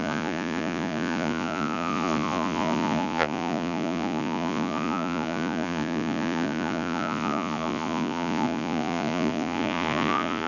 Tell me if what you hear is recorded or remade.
remade